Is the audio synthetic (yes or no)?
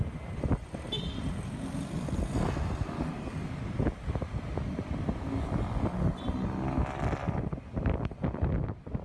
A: no